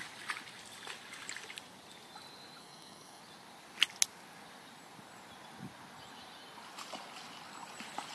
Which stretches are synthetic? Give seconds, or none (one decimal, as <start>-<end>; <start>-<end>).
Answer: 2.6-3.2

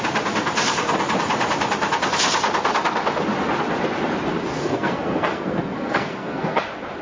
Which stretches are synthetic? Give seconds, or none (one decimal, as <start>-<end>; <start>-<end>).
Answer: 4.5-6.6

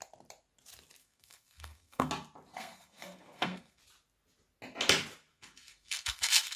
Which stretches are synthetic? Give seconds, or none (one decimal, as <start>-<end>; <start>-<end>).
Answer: 1.0-2.1; 2.5-3.8; 5.3-6.6

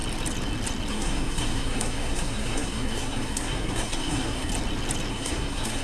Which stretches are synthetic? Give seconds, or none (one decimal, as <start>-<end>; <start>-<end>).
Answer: 0.9-4.5; 5.1-5.8